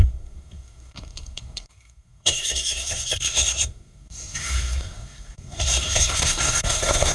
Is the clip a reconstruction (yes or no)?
yes